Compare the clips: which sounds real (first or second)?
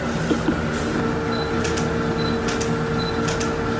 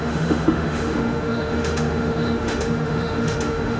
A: first